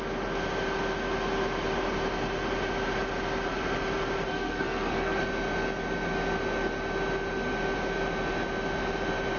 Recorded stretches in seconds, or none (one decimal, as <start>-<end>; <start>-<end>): 0.0-4.3; 5.2-9.4